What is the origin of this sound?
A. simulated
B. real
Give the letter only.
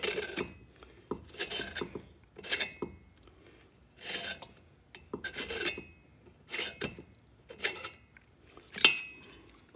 B